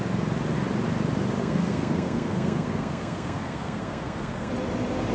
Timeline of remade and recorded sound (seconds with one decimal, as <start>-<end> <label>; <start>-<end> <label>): 0.0-1.4 recorded; 1.4-4.5 remade; 4.5-5.1 recorded